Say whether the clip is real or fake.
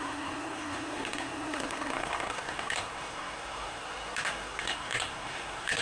fake